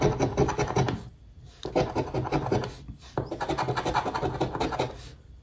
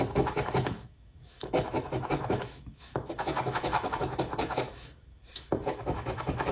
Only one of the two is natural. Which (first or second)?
first